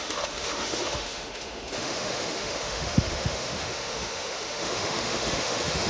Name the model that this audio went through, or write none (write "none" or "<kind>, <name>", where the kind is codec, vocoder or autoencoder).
autoencoder, DAC-VAE